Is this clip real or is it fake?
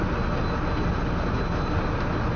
real